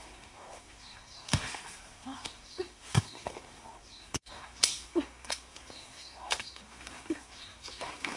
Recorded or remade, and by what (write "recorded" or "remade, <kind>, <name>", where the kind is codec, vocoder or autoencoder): remade, codec, SNAC